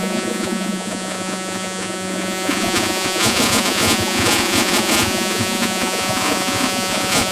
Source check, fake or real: fake